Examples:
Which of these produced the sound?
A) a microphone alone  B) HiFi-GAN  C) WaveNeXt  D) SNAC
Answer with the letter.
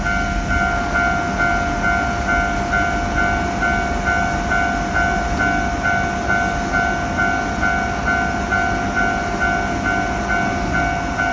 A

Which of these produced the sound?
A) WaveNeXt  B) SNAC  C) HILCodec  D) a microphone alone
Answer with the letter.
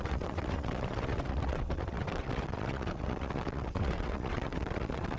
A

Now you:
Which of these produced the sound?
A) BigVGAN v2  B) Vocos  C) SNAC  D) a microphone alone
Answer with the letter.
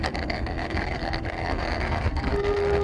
C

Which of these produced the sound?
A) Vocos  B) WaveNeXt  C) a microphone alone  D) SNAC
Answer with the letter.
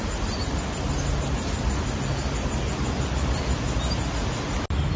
C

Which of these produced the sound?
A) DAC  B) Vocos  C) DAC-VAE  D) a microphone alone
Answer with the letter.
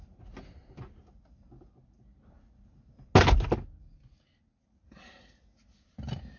D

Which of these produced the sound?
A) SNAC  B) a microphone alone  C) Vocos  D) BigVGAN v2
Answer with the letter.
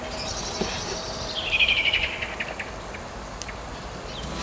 B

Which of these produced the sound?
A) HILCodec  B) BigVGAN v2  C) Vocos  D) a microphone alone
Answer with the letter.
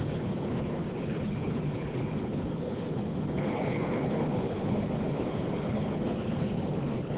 A